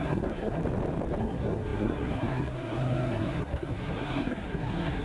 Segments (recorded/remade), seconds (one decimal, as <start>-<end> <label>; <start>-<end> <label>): 0.0-0.6 remade; 0.6-1.2 recorded; 1.2-5.0 remade